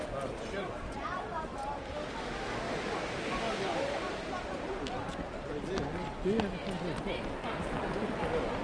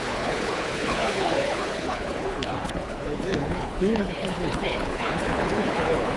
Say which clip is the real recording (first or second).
first